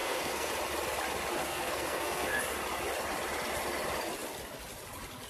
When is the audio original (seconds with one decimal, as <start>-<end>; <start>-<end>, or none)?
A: 0.5-1.4; 2.4-5.3